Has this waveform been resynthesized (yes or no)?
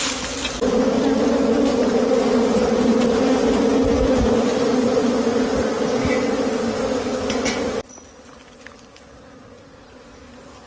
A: no